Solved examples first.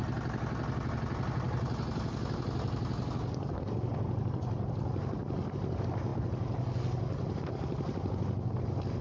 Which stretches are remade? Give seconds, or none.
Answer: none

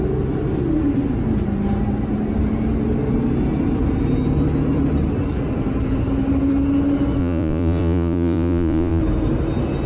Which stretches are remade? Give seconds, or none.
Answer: 7.2-9.0

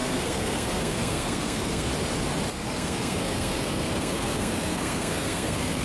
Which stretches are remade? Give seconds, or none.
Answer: 0.0-1.9; 2.5-5.8

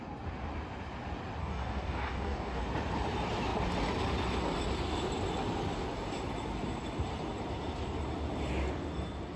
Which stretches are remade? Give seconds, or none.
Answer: 1.4-2.6

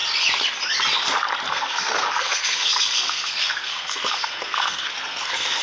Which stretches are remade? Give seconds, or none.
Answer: 1.5-5.6